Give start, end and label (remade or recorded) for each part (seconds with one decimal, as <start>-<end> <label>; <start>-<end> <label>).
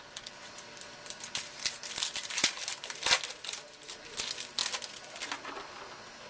0.0-6.3 recorded